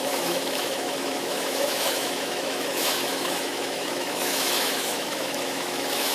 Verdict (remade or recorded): remade